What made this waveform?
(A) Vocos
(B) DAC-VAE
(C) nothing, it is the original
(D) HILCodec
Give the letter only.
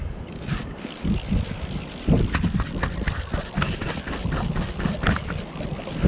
C